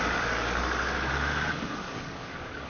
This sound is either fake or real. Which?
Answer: fake